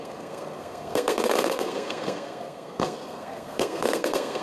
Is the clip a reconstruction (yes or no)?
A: yes